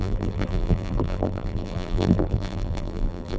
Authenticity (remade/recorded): remade